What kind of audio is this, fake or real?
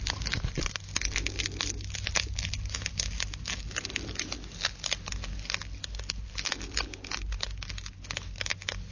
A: real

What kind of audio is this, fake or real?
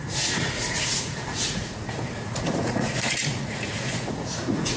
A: fake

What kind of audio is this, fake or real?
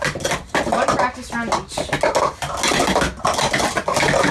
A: real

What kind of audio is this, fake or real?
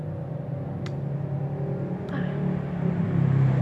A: real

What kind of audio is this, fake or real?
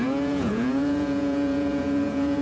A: fake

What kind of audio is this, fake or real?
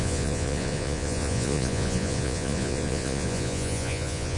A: fake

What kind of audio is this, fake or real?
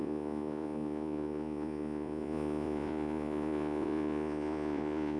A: fake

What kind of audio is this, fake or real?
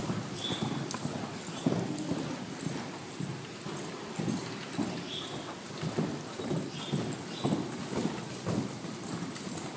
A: real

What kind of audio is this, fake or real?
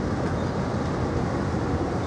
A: real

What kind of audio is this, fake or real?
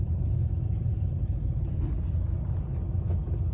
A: real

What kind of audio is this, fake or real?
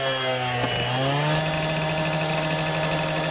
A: real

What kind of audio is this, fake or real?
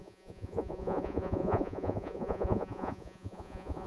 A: fake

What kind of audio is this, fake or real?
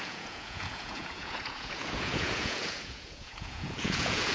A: fake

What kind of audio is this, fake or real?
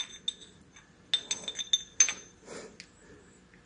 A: real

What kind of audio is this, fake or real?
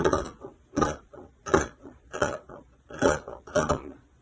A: fake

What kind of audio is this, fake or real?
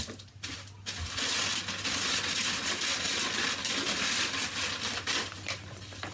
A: real